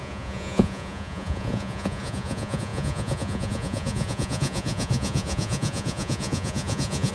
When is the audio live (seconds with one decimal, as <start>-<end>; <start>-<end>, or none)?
none